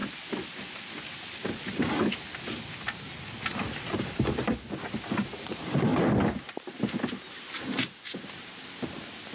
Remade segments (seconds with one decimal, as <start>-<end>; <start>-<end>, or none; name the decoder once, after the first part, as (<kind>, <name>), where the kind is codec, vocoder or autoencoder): 4.0-5.9 (vocoder, BigVGAN v2); 7.3-9.3